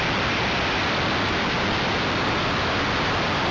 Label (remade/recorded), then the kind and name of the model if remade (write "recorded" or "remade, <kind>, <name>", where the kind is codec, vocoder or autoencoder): recorded